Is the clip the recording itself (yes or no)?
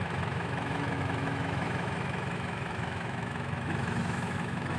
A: no